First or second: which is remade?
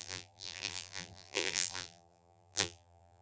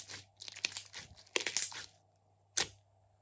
first